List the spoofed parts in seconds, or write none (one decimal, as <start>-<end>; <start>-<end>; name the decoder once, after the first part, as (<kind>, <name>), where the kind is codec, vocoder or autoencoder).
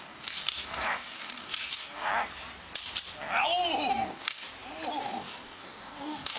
0.0-2.1 (codec, DAC); 3.9-4.5; 5.0-6.4